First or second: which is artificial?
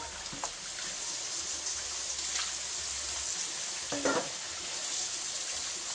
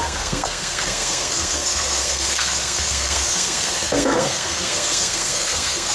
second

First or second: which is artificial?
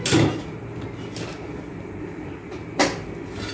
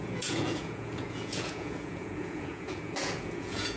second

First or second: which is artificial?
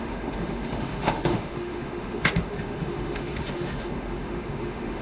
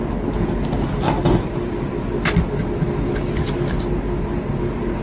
first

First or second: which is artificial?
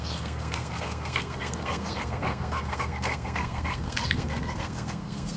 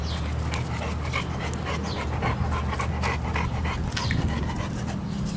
first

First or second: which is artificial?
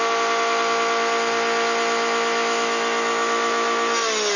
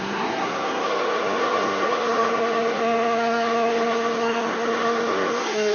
second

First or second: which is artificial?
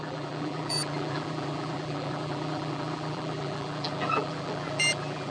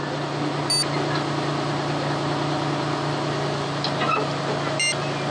first